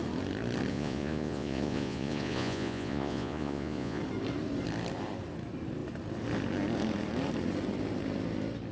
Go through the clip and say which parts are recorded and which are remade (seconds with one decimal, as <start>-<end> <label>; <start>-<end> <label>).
0.0-0.7 recorded; 0.7-4.0 remade; 4.0-8.7 recorded